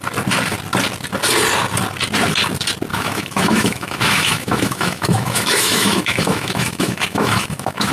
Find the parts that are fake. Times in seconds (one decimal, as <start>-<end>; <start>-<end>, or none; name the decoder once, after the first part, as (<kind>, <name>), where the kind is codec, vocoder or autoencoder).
2.9-7.9 (autoencoder, DAC-VAE)

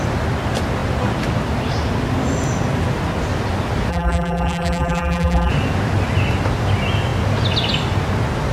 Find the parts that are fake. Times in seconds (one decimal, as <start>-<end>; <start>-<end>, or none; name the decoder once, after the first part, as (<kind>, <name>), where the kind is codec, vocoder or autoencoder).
3.9-5.5 (vocoder, BigVGAN v2)